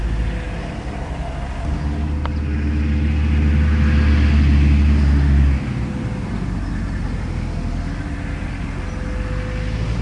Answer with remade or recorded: recorded